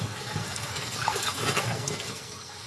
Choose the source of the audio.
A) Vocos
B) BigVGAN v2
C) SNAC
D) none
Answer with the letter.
C